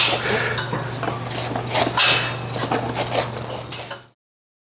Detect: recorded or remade recorded